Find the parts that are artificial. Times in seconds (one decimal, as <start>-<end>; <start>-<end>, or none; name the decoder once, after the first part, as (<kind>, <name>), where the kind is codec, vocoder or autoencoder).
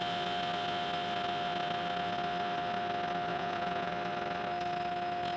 3.3-3.9 (vocoder, Vocos)